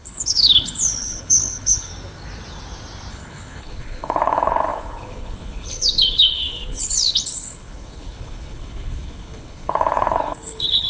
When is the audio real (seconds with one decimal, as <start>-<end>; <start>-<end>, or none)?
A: 1.9-3.1